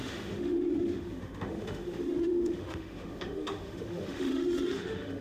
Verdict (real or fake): fake